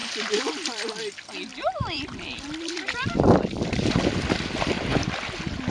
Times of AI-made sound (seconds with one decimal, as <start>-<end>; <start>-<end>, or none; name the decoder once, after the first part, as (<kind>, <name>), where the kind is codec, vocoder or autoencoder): 0.0-1.0 (vocoder, BigVGAN v2); 1.5-4.9